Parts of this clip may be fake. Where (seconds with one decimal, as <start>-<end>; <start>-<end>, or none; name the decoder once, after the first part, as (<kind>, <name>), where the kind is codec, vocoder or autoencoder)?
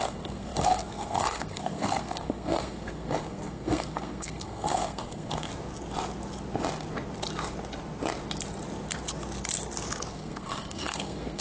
0.0-5.5 (codec, SNAC); 10.1-11.4